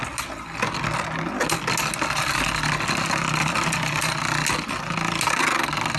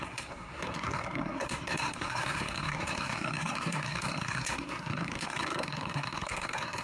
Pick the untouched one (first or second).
first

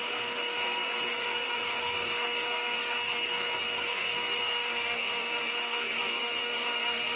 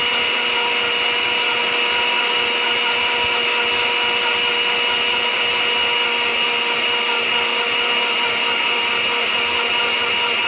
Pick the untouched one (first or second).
second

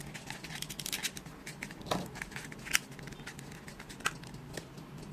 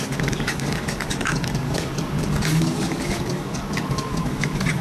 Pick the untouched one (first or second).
first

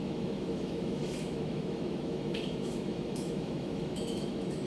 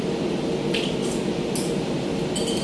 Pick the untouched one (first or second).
second